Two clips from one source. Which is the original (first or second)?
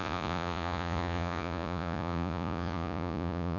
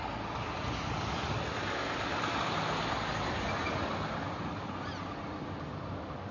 second